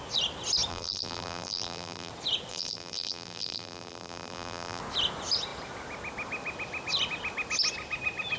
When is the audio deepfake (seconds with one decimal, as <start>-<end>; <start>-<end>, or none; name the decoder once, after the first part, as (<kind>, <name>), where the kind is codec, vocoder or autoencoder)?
0.7-2.1 (vocoder, BigVGAN v2); 2.5-4.8